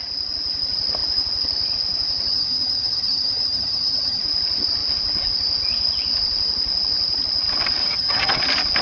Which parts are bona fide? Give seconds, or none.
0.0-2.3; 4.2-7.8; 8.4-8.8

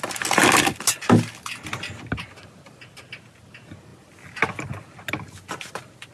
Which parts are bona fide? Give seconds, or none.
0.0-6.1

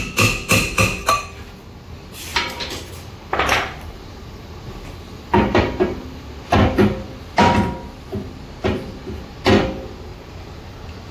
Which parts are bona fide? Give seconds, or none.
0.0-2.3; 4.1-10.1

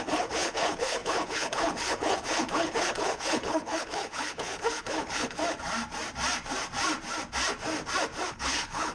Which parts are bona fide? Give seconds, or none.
5.4-8.3